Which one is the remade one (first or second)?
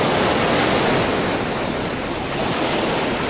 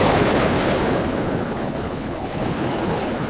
second